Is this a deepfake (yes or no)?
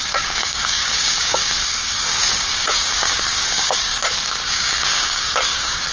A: yes